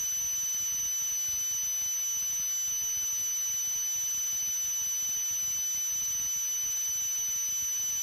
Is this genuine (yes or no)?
yes